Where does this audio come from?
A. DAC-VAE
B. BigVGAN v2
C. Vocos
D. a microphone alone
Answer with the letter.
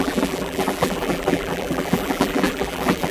B